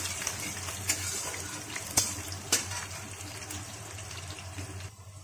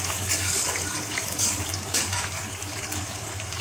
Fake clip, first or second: second